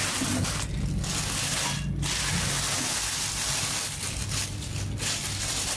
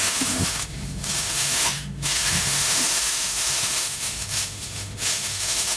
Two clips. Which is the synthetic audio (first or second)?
second